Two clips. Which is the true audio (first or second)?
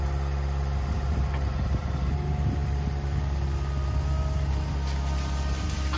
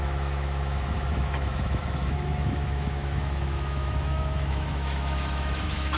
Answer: first